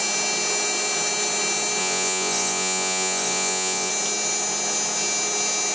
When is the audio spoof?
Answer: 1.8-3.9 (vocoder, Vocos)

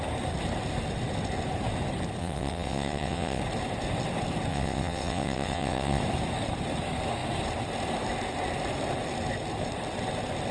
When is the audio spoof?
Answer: 2.2-3.4 (vocoder, WaveNeXt); 4.5-6.0